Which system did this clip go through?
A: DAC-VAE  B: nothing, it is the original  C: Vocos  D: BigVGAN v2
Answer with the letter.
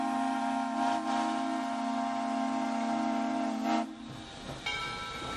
B